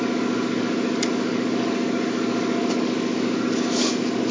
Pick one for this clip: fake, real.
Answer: fake